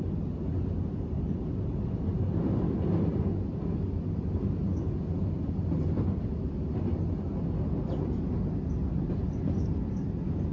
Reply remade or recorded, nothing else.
recorded